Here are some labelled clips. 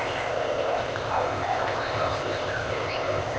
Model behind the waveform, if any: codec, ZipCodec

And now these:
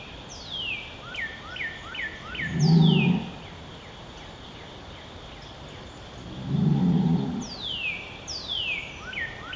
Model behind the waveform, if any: none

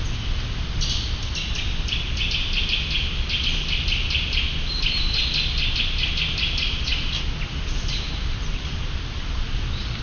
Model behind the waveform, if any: none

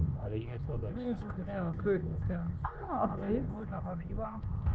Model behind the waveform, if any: codec, ZipCodec